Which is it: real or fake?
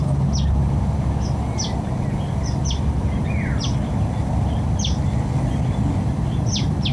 real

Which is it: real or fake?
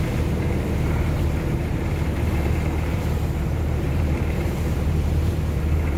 fake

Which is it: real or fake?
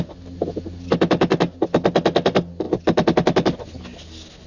real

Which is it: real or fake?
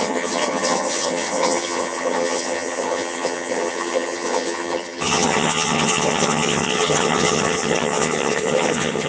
fake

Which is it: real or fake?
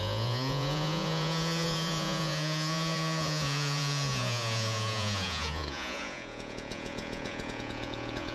fake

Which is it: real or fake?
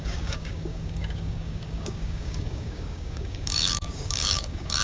fake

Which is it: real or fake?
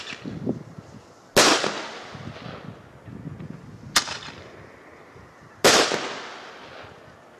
real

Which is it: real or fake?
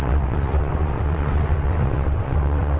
fake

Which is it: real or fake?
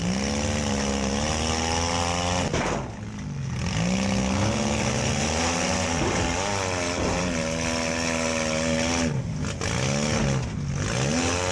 real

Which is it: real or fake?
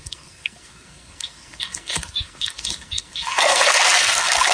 fake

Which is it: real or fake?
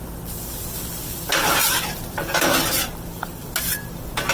real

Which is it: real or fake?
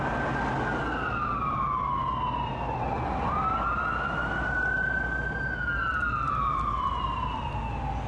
real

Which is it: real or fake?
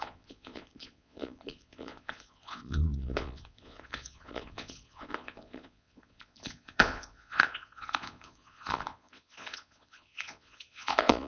fake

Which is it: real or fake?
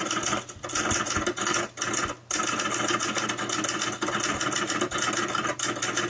real